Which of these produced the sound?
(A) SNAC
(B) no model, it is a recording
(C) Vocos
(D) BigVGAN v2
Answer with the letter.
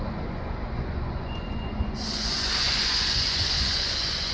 C